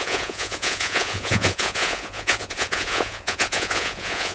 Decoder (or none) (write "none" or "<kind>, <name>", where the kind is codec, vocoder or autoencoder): vocoder, Vocos